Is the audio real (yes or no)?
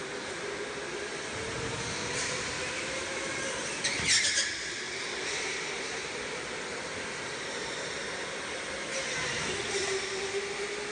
yes